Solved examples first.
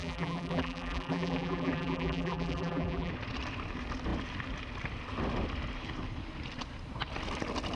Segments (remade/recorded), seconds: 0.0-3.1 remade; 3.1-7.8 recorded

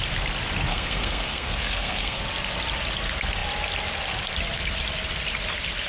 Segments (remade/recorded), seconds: 0.0-0.7 recorded; 0.7-2.2 remade; 2.2-5.9 recorded